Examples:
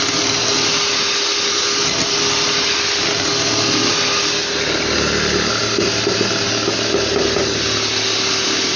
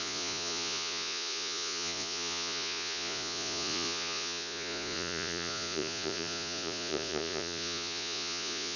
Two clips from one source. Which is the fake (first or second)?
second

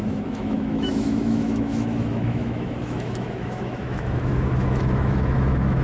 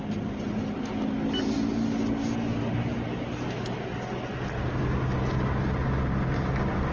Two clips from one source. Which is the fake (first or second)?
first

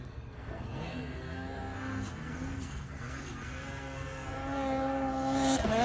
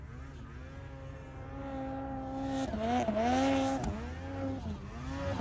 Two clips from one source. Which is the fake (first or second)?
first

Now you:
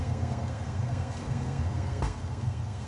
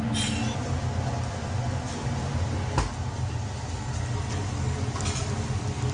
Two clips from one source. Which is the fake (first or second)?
first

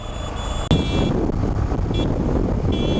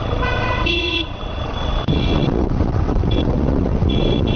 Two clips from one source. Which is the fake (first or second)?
second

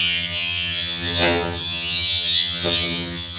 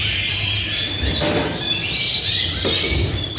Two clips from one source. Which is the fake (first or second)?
first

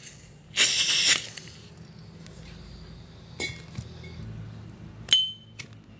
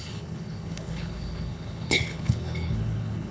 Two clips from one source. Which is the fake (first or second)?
second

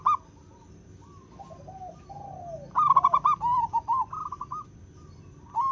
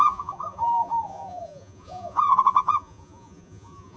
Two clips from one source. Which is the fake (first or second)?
second